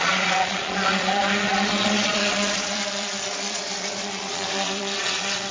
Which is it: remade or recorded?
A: remade